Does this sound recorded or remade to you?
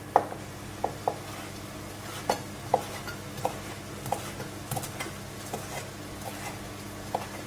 recorded